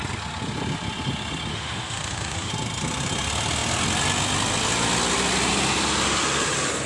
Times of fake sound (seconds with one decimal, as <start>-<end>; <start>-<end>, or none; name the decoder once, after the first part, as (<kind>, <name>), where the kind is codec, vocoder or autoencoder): 1.5-2.5 (autoencoder, DAC-VAE)